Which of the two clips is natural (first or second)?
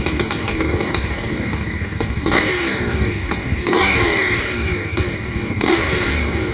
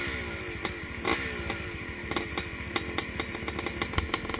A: second